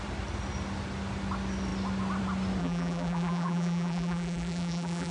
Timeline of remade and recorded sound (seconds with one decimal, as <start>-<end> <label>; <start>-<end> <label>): 0.0-2.6 recorded; 2.6-5.1 remade